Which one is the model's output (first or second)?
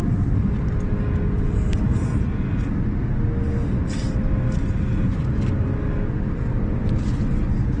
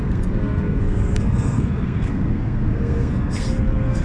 second